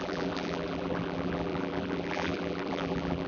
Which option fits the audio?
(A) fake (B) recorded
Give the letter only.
A